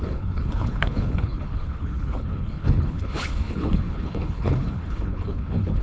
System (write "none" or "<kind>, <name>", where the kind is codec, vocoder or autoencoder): codec, HILCodec